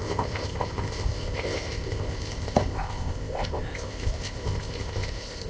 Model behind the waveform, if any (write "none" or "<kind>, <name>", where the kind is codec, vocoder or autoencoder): codec, ZipCodec